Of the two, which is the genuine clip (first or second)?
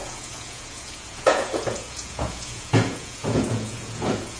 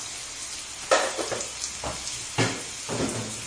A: second